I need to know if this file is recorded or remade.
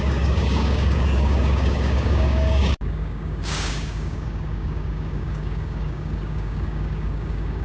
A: remade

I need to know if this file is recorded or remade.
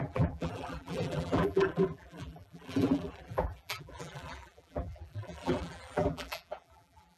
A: remade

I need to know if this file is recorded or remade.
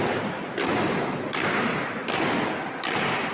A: recorded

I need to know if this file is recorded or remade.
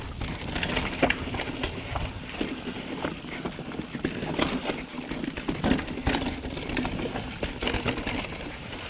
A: recorded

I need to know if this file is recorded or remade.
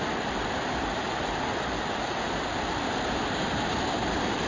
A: remade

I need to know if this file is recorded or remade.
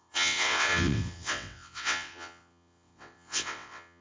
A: remade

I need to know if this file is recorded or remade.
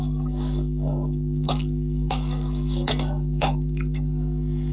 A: remade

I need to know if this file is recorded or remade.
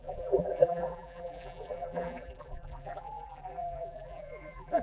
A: remade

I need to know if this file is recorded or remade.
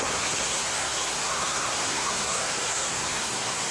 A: remade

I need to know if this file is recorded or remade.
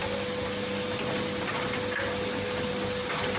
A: recorded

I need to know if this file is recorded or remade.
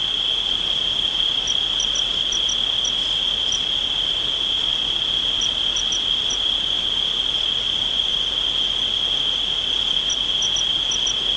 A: recorded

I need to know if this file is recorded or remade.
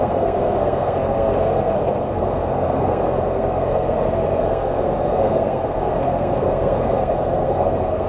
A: remade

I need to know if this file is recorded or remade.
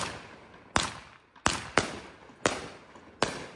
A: recorded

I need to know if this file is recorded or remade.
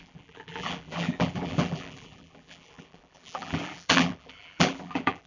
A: remade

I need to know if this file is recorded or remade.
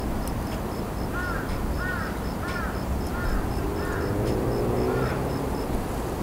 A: recorded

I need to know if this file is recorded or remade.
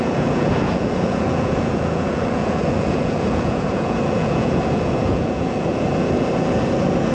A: remade